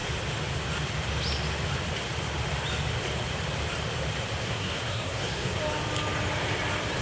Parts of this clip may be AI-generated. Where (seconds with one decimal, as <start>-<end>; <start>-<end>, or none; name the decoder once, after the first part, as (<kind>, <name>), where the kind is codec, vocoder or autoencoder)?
4.4-5.6 (codec, SNAC)